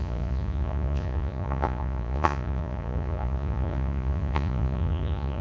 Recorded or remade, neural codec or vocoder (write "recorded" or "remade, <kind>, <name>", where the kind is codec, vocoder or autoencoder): remade, vocoder, Vocos